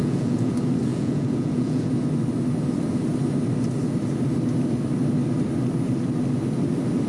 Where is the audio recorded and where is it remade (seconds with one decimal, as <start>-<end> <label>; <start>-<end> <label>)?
0.0-0.5 remade; 0.5-0.9 recorded; 0.9-1.9 remade; 1.9-7.1 recorded